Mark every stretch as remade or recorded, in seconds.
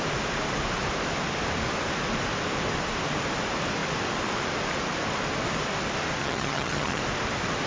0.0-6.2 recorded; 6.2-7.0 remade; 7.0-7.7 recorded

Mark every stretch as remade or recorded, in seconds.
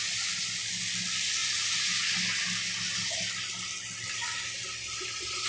0.0-5.5 recorded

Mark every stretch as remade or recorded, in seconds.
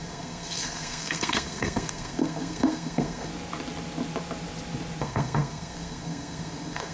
0.0-3.3 remade; 3.3-5.0 recorded; 5.0-6.9 remade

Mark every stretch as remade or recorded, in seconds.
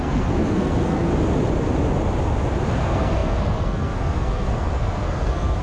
0.0-1.1 remade; 1.1-2.8 recorded; 2.8-5.6 remade